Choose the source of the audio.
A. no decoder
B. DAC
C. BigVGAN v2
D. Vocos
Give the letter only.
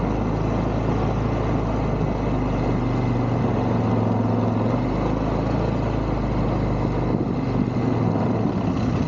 A